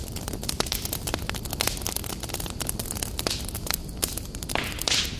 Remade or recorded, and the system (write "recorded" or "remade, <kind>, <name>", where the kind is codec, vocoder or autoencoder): recorded